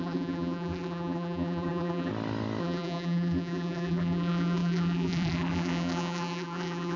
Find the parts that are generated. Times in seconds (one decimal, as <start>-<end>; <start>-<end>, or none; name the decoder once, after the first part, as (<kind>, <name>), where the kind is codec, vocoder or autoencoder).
0.0-2.1 (vocoder, BigVGAN v2); 2.6-7.0